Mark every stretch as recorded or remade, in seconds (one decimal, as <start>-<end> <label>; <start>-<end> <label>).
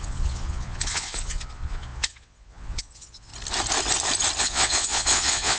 0.0-3.3 remade; 3.3-4.4 recorded; 4.4-5.6 remade